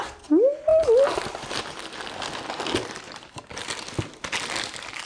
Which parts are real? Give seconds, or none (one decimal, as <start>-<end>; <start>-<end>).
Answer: 0.0-5.1